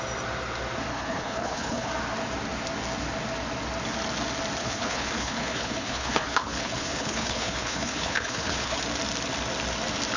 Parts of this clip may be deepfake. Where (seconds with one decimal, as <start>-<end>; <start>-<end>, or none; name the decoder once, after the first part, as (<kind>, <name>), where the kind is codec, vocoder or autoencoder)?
0.9-1.9 (codec, HILCodec); 4.6-8.8